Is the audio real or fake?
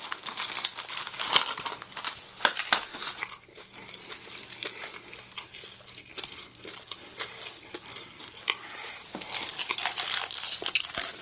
real